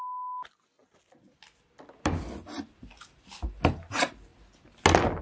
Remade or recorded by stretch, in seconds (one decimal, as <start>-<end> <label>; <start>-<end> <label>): 0.0-5.2 recorded